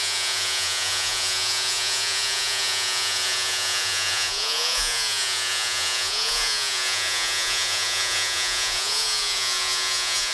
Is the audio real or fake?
fake